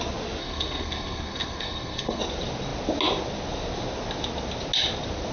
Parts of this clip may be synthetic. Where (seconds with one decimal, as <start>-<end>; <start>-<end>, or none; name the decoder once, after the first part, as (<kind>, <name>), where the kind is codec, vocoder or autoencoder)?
0.4-2.2 (codec, SNAC)

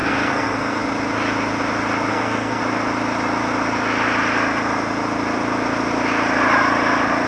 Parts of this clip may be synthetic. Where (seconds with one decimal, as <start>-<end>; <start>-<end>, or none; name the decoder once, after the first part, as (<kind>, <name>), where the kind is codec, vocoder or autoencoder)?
0.0-0.8 (codec, SNAC); 2.1-2.6

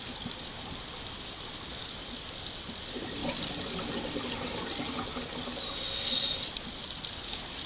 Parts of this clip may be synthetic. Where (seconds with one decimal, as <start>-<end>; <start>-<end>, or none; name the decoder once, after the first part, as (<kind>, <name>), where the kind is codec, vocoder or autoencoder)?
none

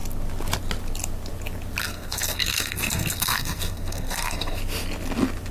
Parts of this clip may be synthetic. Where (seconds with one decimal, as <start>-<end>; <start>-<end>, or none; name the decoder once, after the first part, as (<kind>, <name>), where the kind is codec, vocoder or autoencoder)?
1.8-4.6 (codec, SNAC)

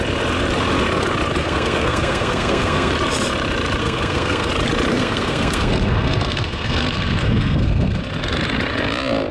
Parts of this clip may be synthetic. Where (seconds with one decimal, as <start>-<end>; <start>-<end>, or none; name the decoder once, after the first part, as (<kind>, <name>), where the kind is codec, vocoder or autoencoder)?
1.4-2.9 (codec, SNAC); 3.8-4.5; 4.9-8.0